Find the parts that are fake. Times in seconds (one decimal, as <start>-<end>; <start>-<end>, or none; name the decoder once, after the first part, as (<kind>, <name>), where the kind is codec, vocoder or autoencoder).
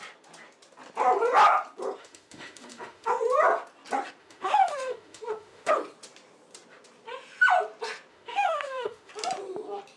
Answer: 2.0-3.2 (autoencoder, DAC-VAE); 4.2-5.7; 8.1-9.1